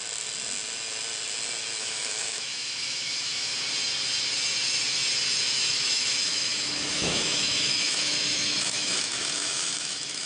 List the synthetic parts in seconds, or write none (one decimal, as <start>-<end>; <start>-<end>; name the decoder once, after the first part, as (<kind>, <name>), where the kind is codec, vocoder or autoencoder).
1.8-3.5 (autoencoder, DAC-VAE); 5.7-10.3